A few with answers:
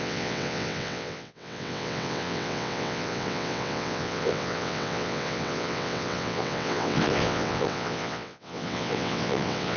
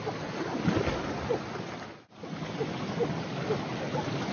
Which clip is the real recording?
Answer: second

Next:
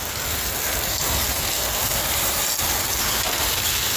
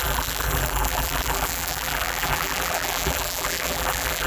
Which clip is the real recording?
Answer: first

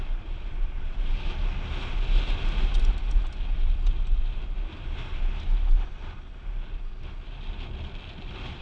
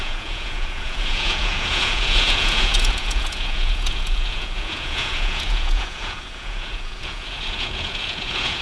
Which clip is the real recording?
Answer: first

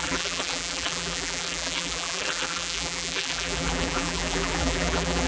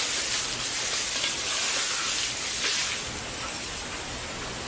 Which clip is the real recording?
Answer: second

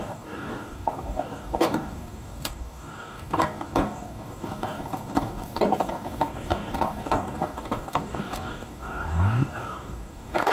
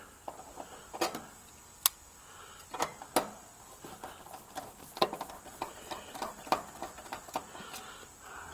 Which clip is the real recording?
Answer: second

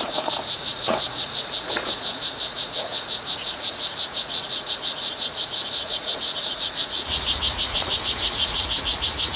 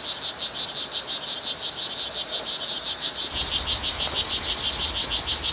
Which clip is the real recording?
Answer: second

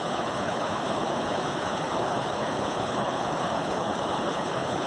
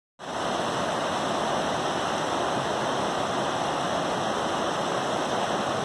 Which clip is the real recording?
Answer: second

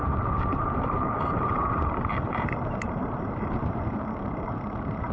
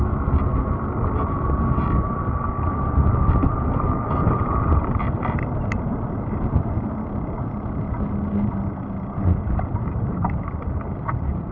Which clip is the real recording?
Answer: second